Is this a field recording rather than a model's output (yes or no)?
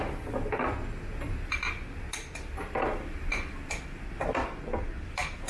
yes